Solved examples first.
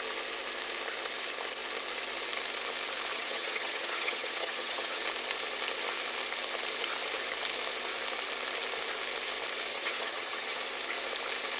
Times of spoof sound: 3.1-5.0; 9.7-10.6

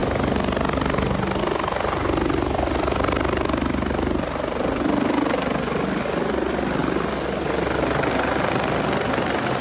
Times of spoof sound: none

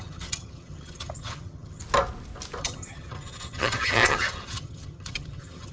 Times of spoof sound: 0.0-1.8; 2.6-5.7

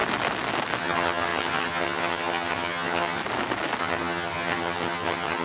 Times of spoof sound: 0.8-3.2; 3.8-5.4

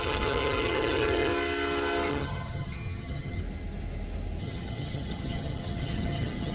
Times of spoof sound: 0.0-1.3; 2.1-3.4; 4.4-6.5